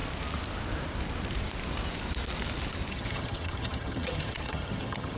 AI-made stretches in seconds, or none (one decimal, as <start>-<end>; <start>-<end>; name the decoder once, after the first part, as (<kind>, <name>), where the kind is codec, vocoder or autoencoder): 2.9-5.2 (vocoder, HiFi-GAN)